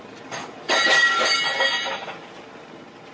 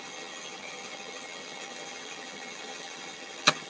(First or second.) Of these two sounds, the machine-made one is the second